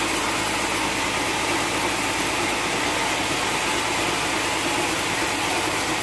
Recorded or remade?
recorded